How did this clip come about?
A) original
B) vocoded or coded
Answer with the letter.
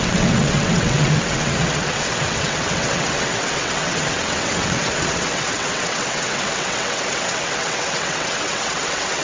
B